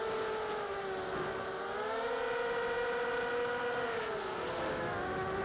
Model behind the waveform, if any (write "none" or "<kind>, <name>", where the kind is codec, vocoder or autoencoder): none